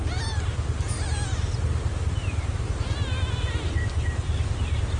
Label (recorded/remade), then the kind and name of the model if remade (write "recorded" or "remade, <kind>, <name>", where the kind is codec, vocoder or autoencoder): recorded